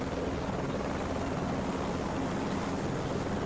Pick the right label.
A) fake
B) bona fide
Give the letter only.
B